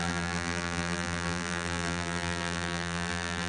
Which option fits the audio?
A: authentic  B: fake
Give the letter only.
B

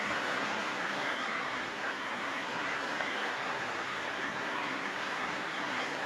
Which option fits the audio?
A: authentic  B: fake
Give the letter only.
B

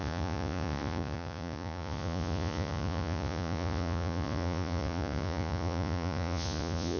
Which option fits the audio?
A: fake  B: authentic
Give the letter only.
A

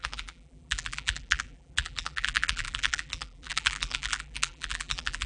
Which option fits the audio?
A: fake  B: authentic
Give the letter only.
A